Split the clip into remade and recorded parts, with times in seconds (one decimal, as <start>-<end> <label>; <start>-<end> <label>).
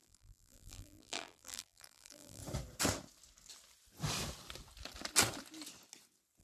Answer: 0.0-2.4 remade; 2.4-6.4 recorded